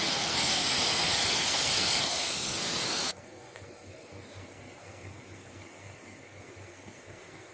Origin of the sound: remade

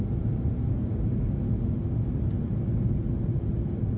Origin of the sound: recorded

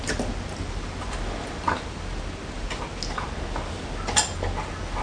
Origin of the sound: recorded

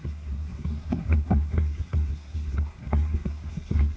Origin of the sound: remade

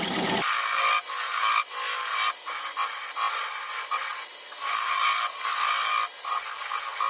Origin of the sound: recorded